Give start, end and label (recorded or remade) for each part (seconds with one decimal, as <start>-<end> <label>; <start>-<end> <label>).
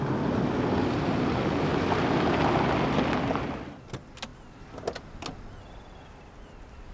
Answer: 0.0-6.9 recorded